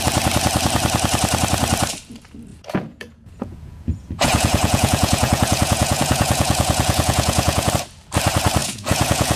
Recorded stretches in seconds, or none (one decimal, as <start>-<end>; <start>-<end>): 0.0-2.5; 7.7-8.6